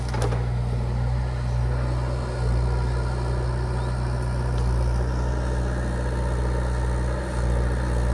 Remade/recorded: recorded